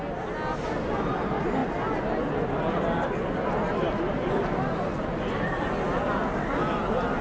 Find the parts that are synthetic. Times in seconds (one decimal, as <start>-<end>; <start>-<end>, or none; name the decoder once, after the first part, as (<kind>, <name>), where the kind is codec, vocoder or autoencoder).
none